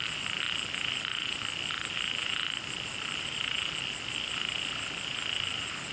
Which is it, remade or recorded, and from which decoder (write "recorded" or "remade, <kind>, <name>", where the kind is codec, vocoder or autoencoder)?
recorded